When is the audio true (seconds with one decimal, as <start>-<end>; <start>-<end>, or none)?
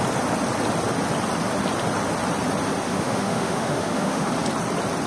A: 0.0-2.9; 4.3-5.1